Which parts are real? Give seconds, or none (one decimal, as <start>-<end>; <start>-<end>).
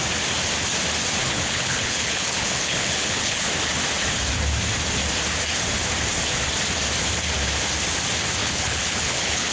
0.0-1.2; 3.5-8.4